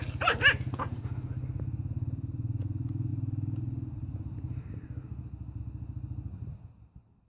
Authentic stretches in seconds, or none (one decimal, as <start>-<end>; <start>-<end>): 0.0-3.1; 5.6-7.3